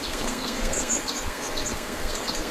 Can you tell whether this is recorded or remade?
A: remade